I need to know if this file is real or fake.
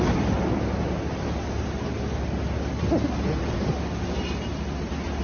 real